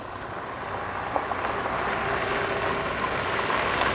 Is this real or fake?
real